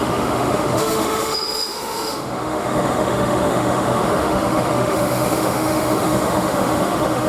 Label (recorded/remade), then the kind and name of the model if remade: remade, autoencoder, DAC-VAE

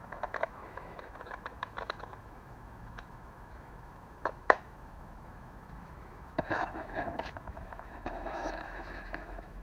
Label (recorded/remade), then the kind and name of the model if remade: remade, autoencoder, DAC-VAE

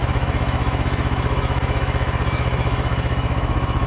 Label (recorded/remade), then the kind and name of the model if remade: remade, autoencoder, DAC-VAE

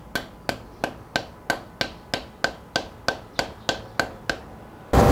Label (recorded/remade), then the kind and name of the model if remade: recorded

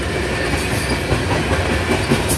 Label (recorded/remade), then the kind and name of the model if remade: recorded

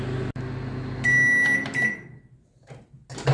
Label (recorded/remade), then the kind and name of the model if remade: recorded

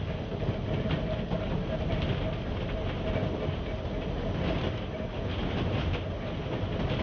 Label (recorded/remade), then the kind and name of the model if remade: recorded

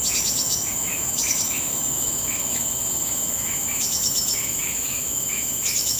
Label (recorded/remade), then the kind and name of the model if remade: remade, autoencoder, DAC-VAE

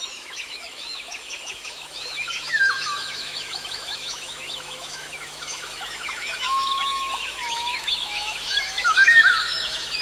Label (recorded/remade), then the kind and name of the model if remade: remade, autoencoder, DAC-VAE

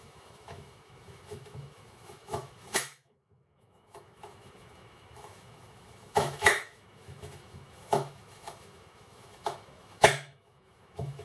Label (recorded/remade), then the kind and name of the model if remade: remade, autoencoder, DAC-VAE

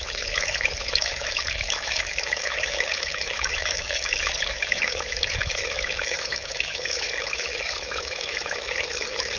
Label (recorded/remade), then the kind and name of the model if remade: remade, autoencoder, DAC-VAE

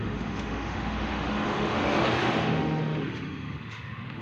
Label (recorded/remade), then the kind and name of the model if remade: remade, autoencoder, DAC-VAE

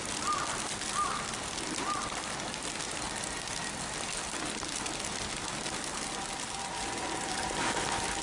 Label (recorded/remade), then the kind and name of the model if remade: recorded